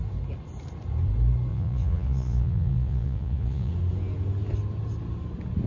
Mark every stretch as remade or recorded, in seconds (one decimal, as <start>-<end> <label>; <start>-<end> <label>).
0.0-1.5 recorded; 1.5-3.7 remade; 3.7-5.7 recorded